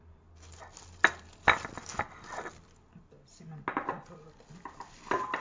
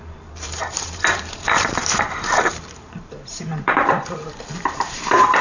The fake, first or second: second